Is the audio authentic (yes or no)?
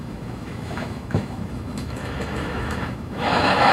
no